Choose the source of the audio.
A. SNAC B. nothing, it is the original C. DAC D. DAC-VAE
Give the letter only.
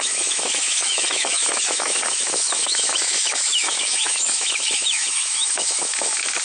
D